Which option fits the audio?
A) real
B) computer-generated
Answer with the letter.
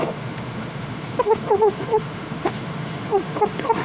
B